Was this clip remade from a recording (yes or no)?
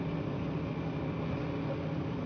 no